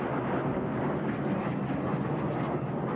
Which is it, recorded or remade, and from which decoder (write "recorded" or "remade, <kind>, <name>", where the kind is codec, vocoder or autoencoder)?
recorded